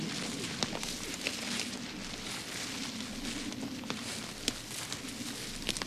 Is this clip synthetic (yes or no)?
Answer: no